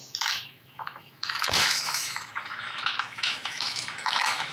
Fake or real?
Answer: fake